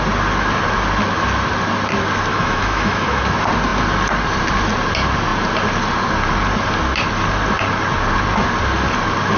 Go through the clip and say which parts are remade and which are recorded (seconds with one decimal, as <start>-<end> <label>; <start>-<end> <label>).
0.0-2.3 recorded; 2.3-3.2 remade; 3.2-9.4 recorded